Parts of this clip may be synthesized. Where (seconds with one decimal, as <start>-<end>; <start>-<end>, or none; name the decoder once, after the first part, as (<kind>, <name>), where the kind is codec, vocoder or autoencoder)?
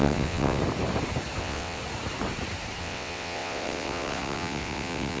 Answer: 0.0-0.6 (vocoder, WaveNeXt); 1.4-1.8; 2.8-5.2